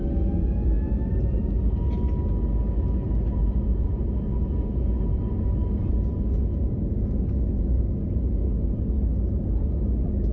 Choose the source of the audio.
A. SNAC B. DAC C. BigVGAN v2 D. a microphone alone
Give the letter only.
D